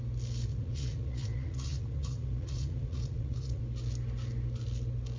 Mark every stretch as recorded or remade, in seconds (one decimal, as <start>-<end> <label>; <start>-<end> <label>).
0.0-0.5 recorded; 0.5-3.6 remade; 3.6-5.2 recorded